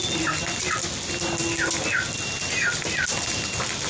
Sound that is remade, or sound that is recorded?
recorded